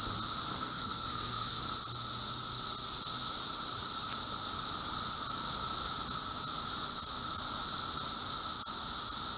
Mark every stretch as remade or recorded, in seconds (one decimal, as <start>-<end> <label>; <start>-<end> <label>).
0.0-0.5 recorded; 0.5-1.6 remade; 1.6-9.4 recorded